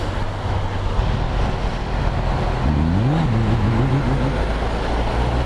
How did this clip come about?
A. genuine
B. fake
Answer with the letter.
A